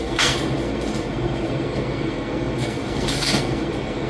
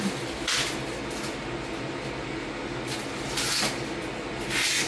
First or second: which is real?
second